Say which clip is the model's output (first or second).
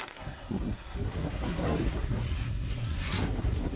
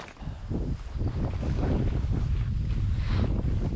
first